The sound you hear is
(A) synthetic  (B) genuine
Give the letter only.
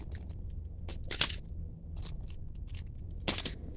B